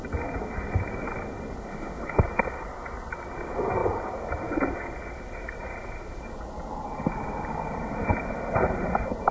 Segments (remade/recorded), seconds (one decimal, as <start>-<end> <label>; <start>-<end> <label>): 0.0-1.7 recorded; 1.7-2.2 remade; 2.2-9.3 recorded